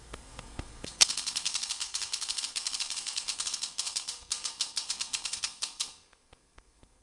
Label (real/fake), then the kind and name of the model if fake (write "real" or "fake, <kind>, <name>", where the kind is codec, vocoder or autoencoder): fake, codec, SNAC